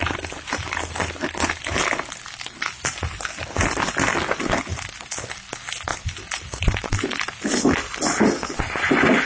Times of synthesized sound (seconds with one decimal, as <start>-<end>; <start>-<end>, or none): 5.9-6.9